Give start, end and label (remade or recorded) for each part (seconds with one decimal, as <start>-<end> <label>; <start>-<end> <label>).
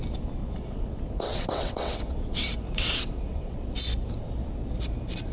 0.0-0.4 recorded; 0.4-3.6 remade; 3.6-5.3 recorded